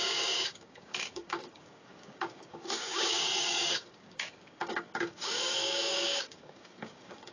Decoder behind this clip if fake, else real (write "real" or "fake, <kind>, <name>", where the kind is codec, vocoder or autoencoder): fake, codec, DAC